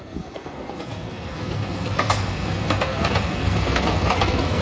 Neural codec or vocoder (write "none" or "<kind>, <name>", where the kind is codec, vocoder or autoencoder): codec, SNAC